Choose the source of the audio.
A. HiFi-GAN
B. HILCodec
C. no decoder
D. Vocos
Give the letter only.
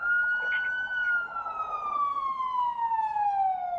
C